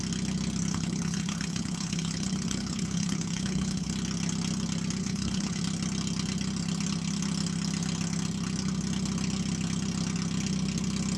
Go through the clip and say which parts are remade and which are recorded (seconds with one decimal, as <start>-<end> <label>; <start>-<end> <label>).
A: 0.0-0.7 recorded; 0.7-3.9 remade; 3.9-5.0 recorded; 5.0-5.6 remade; 5.6-11.2 recorded